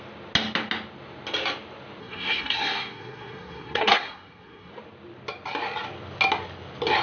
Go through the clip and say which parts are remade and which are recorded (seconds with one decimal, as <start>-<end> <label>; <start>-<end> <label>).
0.0-2.0 recorded; 2.0-4.7 remade; 4.7-7.0 recorded